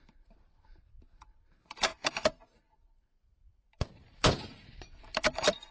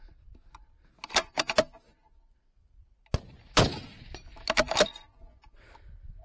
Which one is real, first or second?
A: second